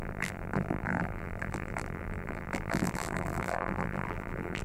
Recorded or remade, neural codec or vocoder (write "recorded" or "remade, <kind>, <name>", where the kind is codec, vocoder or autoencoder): remade, vocoder, BigVGAN v2